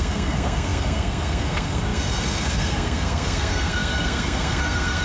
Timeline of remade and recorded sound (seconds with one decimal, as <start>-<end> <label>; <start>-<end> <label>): 0.0-5.0 remade